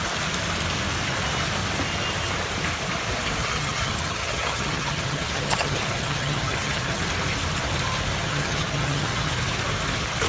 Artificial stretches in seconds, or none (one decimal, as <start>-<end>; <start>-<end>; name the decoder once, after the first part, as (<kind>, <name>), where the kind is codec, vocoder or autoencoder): 3.4-7.0 (vocoder, HiFi-GAN); 8.2-9.3